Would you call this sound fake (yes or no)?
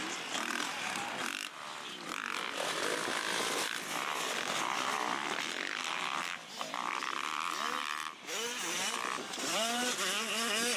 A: yes